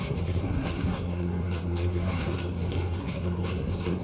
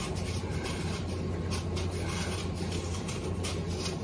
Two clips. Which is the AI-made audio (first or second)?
first